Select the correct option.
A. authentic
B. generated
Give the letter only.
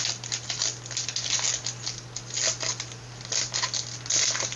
A